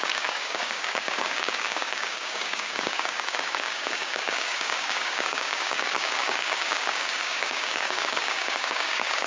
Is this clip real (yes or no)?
no